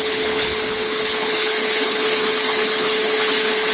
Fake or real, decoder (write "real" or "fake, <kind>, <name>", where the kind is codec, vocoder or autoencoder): fake, codec, HILCodec